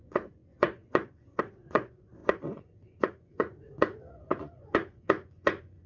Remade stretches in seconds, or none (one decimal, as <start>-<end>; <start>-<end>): 0.0-5.9

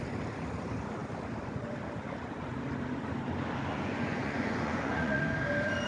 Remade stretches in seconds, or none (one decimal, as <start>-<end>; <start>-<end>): 3.7-5.2

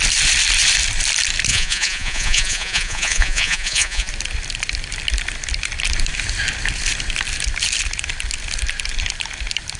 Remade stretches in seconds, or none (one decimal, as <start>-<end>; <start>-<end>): 1.5-4.1

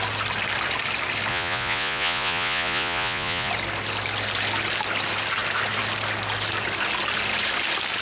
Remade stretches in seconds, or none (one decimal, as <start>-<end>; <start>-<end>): 1.3-3.5

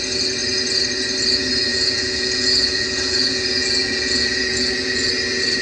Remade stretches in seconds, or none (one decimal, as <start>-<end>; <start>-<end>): 1.7-5.1

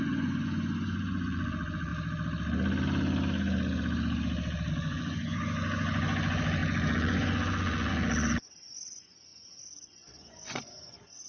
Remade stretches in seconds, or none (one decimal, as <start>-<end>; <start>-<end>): 0.0-1.9; 4.7-11.3

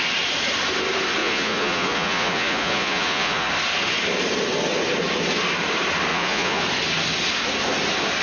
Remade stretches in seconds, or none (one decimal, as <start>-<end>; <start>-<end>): 1.2-3.5; 6.1-6.6